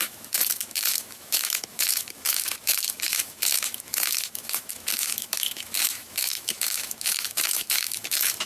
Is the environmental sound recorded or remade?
remade